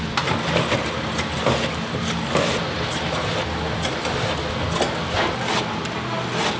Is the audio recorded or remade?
recorded